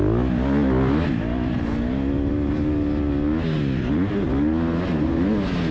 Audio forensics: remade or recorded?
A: recorded